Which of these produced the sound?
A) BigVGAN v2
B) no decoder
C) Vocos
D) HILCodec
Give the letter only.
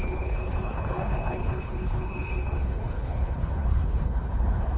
D